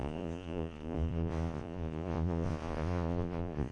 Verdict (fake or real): fake